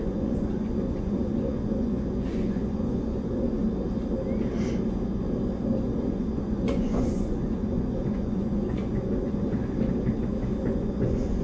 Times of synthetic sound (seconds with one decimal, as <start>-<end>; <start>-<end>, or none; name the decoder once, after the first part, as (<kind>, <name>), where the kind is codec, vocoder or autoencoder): 0.0-3.6 (vocoder, Vocos); 6.1-9.6; 10.7-11.4